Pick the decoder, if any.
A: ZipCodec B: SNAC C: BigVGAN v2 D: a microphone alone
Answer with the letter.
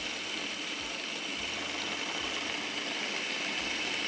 D